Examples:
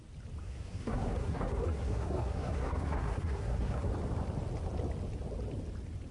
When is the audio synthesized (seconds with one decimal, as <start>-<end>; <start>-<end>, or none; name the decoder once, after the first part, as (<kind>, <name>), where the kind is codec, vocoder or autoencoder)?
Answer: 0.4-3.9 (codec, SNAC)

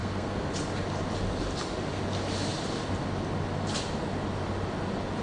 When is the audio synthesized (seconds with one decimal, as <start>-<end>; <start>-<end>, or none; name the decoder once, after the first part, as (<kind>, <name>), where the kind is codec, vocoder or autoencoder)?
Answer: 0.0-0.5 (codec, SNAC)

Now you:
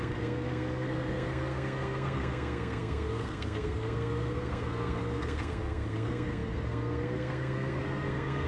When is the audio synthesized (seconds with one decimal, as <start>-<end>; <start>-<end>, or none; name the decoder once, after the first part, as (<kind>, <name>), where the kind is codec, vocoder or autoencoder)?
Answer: 0.0-8.5 (codec, SNAC)

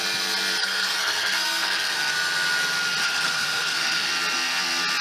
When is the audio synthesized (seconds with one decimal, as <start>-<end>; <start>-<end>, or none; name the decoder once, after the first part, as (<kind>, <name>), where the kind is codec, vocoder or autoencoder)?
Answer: 0.6-2.1 (codec, SNAC); 3.0-4.1

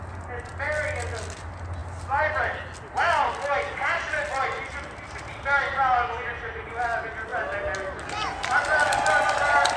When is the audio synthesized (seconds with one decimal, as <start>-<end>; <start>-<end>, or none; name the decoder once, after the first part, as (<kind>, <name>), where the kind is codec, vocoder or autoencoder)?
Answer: none

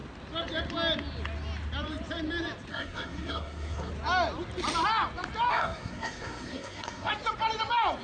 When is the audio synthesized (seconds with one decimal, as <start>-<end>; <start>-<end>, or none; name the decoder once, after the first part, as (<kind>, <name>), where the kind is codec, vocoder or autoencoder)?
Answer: 2.7-3.9 (codec, SNAC); 5.5-7.1

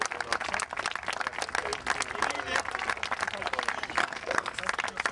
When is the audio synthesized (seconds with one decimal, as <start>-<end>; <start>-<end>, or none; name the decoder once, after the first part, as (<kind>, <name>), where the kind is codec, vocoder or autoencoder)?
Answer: 4.0-4.6 (codec, SNAC)

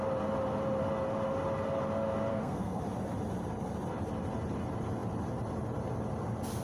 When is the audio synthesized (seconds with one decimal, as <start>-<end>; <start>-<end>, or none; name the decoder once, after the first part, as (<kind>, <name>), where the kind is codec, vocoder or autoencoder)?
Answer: 2.3-2.8 (codec, SNAC)